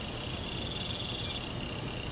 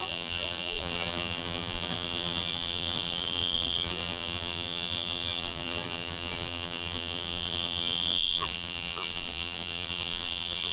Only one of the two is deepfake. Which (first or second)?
second